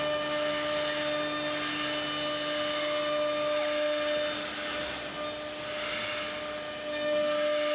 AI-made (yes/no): no